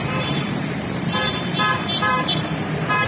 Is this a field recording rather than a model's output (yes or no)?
no